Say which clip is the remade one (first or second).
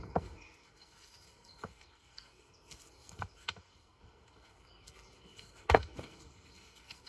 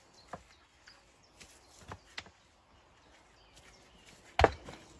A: first